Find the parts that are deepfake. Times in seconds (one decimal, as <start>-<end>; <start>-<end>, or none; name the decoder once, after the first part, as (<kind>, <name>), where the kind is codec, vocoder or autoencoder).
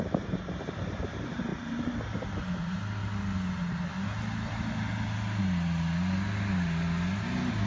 none